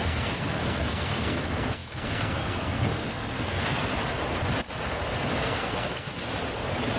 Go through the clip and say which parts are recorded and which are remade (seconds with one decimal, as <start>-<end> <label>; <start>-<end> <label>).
0.0-3.9 remade; 3.9-5.4 recorded; 5.4-6.1 remade; 6.1-7.0 recorded

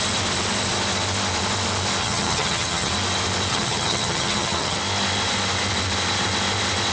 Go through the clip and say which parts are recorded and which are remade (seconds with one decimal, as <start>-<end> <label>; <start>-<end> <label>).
0.0-2.0 recorded; 2.0-2.9 remade; 2.9-3.5 recorded; 3.5-4.8 remade; 4.8-6.9 recorded

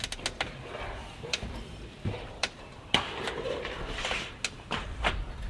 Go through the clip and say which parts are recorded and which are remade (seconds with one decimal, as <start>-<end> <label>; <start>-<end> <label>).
0.0-1.0 recorded; 1.0-4.3 remade; 4.3-5.5 recorded

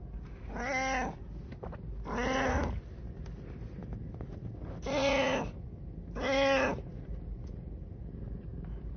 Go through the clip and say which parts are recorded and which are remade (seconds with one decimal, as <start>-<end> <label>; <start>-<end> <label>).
0.0-9.0 recorded

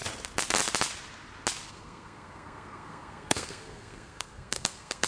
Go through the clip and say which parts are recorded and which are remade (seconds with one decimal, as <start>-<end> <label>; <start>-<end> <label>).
0.0-1.7 recorded; 1.7-5.1 remade